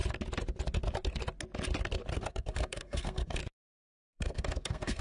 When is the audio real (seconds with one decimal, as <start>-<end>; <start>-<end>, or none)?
0.0-2.1; 3.4-3.9